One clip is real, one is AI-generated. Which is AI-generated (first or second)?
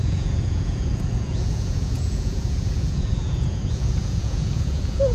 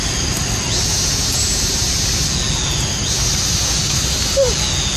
first